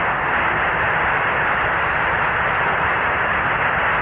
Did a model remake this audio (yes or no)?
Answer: no